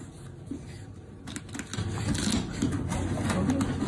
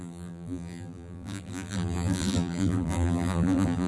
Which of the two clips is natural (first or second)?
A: first